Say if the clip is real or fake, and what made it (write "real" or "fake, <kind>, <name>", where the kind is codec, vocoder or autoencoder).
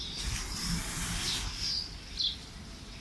real